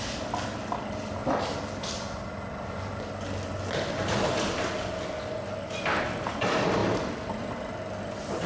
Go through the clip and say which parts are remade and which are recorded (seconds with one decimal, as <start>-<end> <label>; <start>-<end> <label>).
0.0-8.5 recorded